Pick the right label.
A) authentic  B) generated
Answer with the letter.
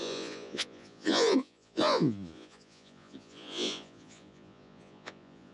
B